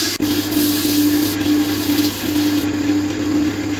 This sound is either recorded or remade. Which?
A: recorded